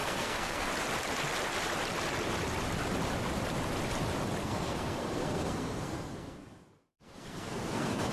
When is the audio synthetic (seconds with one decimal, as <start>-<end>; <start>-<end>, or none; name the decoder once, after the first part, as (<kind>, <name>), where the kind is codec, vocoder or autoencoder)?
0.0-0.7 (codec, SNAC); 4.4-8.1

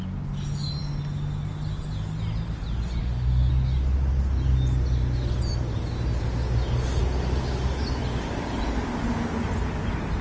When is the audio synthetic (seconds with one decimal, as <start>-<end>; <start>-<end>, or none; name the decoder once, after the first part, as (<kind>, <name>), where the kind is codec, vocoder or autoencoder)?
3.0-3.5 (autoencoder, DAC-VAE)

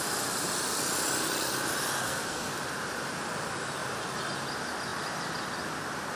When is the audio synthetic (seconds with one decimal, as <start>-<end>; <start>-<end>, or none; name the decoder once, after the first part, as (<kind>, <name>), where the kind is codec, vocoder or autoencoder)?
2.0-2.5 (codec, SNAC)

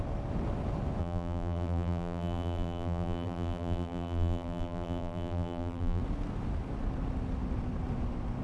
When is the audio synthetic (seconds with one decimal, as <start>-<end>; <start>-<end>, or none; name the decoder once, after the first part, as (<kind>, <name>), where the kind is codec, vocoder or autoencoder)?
1.0-6.0 (vocoder, BigVGAN v2)

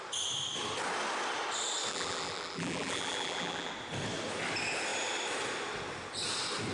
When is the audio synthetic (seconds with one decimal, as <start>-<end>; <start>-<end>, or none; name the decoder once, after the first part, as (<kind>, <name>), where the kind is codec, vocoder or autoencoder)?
1.9-3.7 (vocoder, BigVGAN v2)

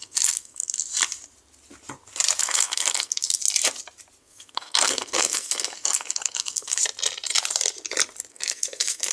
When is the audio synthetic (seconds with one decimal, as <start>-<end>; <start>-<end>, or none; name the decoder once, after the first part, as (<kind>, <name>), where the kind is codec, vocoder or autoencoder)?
0.0-0.9 (codec, SNAC); 2.4-3.4; 4.2-6.8; 8.3-9.1